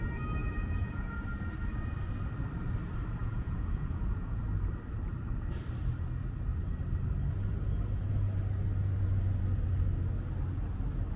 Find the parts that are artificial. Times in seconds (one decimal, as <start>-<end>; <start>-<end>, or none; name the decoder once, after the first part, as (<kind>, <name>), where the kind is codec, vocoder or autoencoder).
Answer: 0.4-1.2 (vocoder, Vocos); 3.2-4.4